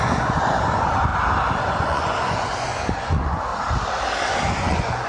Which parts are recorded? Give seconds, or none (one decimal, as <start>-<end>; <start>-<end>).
1.1-1.6; 3.5-4.5